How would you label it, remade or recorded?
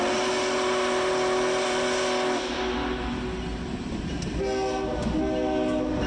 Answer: recorded